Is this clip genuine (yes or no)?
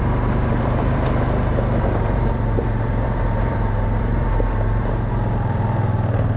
no